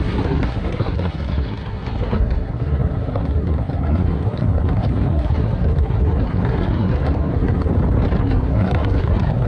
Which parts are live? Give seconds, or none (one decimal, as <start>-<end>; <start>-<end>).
7.7-8.2